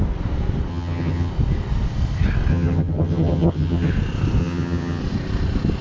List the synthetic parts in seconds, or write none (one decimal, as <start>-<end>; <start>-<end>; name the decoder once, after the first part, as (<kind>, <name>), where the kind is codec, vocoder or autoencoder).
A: 0.7-1.3 (vocoder, HiFi-GAN); 2.5-3.9; 4.4-5.0